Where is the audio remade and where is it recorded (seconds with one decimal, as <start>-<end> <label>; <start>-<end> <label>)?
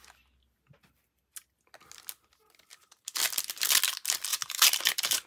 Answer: 0.0-2.7 recorded; 2.7-3.2 remade; 3.2-4.3 recorded; 4.3-5.3 remade